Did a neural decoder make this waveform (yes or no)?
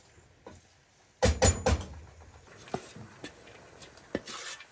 no